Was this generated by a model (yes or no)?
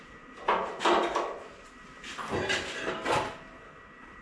no